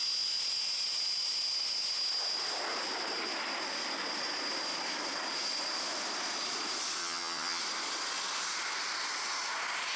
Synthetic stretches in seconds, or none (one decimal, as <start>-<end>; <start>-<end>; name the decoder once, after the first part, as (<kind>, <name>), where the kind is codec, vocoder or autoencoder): 7.0-7.6 (vocoder, HiFi-GAN)